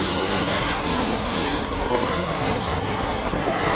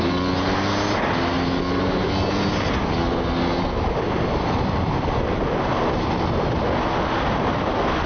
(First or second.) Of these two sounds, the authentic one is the second